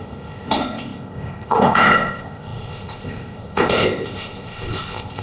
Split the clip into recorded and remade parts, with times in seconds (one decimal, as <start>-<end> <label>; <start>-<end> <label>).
0.0-5.2 remade